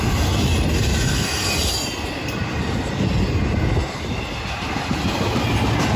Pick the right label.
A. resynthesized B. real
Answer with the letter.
B